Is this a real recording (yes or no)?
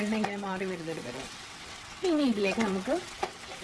no